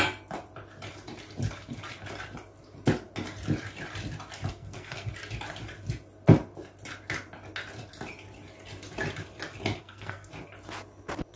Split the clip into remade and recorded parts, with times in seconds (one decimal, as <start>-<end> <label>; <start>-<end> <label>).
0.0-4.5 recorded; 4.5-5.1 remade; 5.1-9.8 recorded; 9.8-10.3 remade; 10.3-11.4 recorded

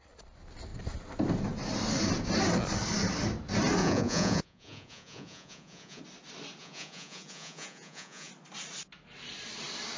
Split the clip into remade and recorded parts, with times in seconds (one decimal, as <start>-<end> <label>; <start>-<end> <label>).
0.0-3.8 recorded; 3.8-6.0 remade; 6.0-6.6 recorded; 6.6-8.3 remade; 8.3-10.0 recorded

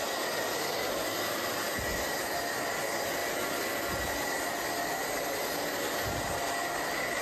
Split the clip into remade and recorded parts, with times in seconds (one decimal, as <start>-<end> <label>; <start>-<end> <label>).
0.0-7.2 recorded

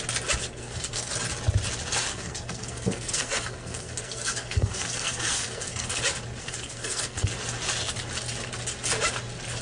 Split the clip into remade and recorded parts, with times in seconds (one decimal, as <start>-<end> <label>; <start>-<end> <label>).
0.0-0.4 recorded; 0.4-1.1 remade; 1.1-2.1 recorded; 2.1-6.0 remade; 6.0-6.4 recorded; 6.4-7.3 remade; 7.3-9.6 recorded

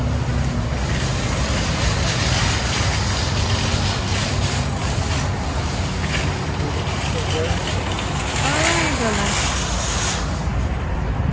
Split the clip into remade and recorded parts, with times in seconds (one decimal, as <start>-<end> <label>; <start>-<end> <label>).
0.0-10.5 recorded; 10.5-11.3 remade